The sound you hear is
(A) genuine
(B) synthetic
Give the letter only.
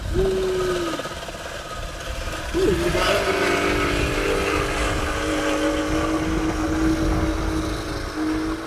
A